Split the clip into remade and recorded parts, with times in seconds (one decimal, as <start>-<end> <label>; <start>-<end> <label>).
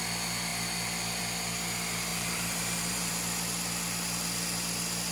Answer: 0.0-2.1 recorded; 2.1-3.1 remade; 3.1-5.1 recorded